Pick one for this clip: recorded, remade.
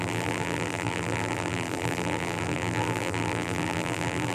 remade